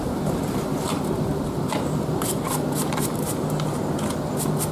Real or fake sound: real